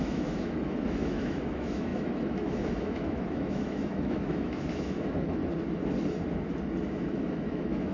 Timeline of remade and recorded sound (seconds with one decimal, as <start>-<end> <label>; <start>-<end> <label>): 0.0-5.4 remade; 5.4-6.9 recorded; 6.9-7.9 remade